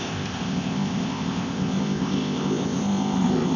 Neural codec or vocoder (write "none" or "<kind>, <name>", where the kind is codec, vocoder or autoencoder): codec, ZipCodec